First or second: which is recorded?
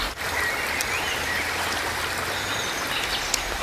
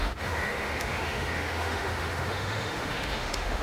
first